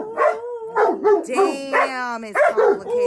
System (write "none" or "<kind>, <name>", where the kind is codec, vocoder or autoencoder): none